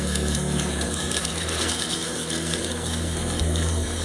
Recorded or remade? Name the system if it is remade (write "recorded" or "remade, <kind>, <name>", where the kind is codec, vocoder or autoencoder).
remade, codec, SNAC